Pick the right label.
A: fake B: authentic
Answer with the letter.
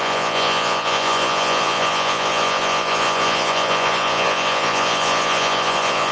A